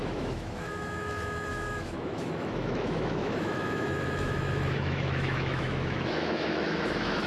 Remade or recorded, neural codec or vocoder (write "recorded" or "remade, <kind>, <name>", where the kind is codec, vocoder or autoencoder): remade, autoencoder, DAC-VAE